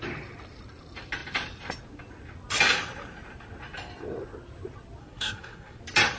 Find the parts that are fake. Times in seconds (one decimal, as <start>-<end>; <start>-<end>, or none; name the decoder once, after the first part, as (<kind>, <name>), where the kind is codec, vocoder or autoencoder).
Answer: 5.0-5.8 (codec, SNAC)